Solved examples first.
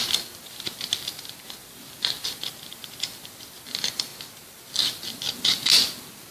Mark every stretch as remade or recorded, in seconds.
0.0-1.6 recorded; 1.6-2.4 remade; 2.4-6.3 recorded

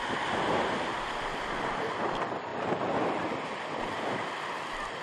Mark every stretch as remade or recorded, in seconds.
0.0-5.0 recorded

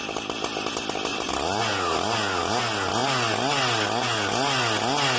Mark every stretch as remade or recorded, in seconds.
0.0-1.1 recorded; 1.1-1.6 remade; 1.6-5.2 recorded

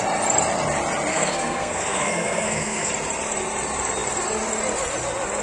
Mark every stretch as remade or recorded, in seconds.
0.0-1.1 recorded; 1.1-2.9 remade; 2.9-5.4 recorded

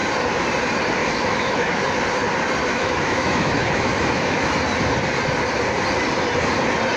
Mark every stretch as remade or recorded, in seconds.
0.0-1.0 recorded; 1.0-1.8 remade; 1.8-2.7 recorded; 2.7-4.5 remade; 4.5-7.0 recorded

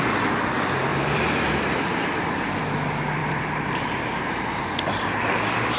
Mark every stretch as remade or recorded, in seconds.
0.0-0.9 recorded; 0.9-1.5 remade; 1.5-3.2 recorded; 3.2-5.2 remade; 5.2-5.8 recorded

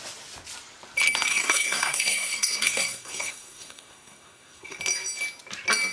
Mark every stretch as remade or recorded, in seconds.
0.0-1.3 recorded; 1.3-4.8 remade; 4.8-5.9 recorded

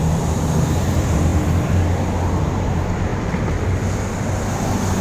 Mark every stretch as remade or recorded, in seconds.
0.0-1.3 remade; 1.3-2.4 recorded; 2.4-3.1 remade; 3.1-5.0 recorded